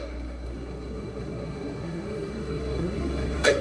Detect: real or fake fake